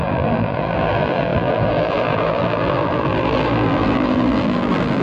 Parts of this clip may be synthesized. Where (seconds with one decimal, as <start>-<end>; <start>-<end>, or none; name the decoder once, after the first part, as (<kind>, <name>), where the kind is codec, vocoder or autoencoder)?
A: 0.0-5.0 (vocoder, BigVGAN v2)